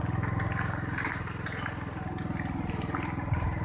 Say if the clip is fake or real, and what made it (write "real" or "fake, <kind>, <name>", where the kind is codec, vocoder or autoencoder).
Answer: real